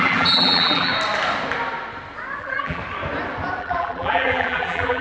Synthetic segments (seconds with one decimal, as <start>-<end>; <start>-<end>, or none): 0.0-0.9; 2.4-2.8; 3.6-5.0